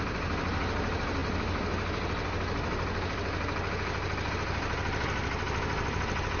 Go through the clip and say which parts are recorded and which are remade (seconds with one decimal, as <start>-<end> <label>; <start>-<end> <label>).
0.0-6.4 recorded